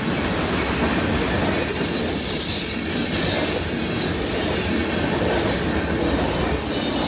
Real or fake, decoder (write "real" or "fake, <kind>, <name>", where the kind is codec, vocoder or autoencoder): real